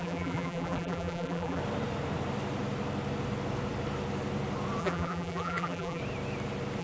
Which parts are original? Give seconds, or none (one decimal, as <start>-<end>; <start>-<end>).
1.6-4.8; 6.0-6.8